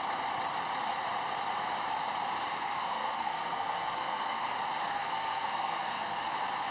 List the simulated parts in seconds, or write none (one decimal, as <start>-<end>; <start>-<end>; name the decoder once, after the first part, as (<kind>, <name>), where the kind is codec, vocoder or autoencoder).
2.5-4.5 (codec, SNAC); 4.9-6.2